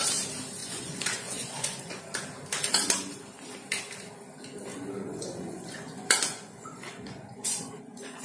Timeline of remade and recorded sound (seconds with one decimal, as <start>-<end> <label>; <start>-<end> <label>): 0.0-0.6 recorded; 0.6-2.0 remade; 2.0-4.7 recorded; 4.7-8.2 remade